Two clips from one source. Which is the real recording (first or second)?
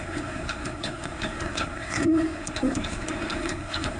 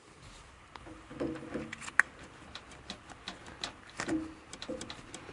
second